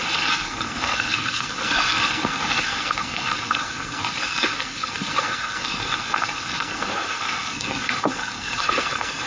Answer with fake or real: fake